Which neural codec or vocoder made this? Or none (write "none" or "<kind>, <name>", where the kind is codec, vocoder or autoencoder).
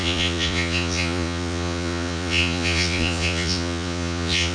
vocoder, Vocos